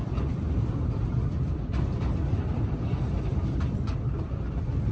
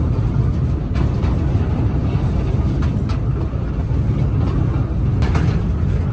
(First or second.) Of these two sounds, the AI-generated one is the first